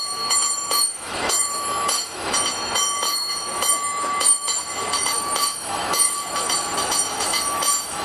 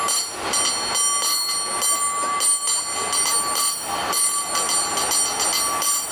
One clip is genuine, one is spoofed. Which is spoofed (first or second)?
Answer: first